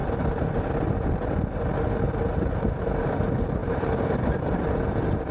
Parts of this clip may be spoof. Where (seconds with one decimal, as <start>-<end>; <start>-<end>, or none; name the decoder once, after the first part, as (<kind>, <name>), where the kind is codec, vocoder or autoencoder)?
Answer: 3.6-4.2 (vocoder, BigVGAN v2)